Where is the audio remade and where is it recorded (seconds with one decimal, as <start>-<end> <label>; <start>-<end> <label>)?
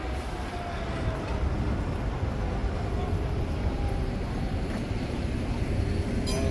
0.0-2.6 recorded; 2.6-5.9 remade; 5.9-6.5 recorded